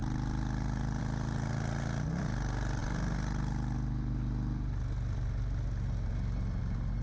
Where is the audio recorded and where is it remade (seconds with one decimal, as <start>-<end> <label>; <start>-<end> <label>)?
0.0-7.0 recorded